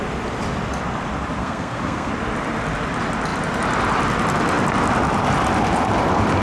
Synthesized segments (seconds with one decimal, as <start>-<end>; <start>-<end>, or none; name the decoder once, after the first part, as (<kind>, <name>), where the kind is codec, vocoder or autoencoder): 1.4-2.1 (codec, SNAC)